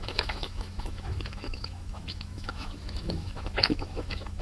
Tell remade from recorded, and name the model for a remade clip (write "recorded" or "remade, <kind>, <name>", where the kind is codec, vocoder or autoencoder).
remade, autoencoder, DAC-VAE